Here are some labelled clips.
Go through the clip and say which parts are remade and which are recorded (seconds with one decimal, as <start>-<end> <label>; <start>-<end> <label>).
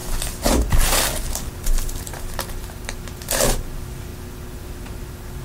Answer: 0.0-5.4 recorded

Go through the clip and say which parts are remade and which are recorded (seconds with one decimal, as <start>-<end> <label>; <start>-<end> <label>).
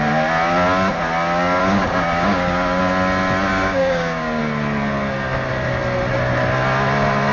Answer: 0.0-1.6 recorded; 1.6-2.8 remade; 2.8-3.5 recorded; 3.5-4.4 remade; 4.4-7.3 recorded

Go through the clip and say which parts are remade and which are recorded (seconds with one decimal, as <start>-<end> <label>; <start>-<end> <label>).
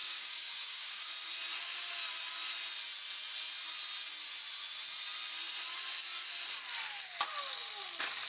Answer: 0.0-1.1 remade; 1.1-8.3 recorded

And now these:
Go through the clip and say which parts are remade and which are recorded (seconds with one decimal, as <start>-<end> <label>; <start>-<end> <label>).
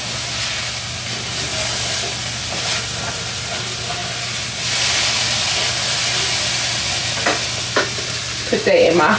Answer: 0.0-9.2 recorded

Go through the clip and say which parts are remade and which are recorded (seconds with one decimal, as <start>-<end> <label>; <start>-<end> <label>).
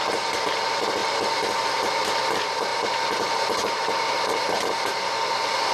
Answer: 0.0-2.7 recorded; 2.7-4.3 remade; 4.3-5.7 recorded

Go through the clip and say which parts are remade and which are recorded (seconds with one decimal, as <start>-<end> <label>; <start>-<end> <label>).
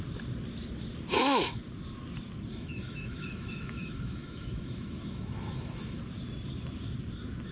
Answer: 0.0-1.1 recorded; 1.1-1.6 remade; 1.6-2.5 recorded; 2.5-6.0 remade; 6.0-7.5 recorded